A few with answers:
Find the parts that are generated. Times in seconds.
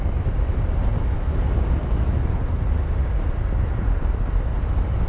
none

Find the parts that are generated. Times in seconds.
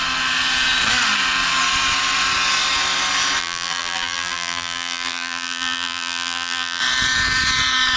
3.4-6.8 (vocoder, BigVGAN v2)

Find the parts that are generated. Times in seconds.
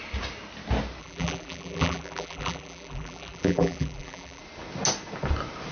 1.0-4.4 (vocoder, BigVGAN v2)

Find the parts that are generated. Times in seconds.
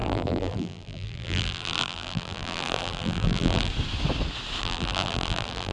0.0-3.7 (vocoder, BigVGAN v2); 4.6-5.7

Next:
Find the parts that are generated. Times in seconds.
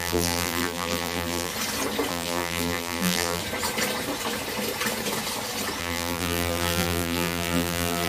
0.0-1.5 (vocoder, BigVGAN v2); 2.1-3.4; 5.8-8.1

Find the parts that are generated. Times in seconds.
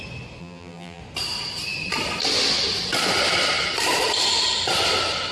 0.4-1.0 (vocoder, BigVGAN v2)